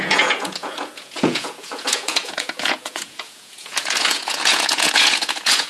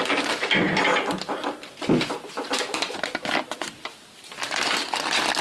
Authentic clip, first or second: second